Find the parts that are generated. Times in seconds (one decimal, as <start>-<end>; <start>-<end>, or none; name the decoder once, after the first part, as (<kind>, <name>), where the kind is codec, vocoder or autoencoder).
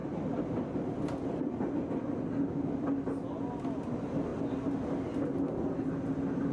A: none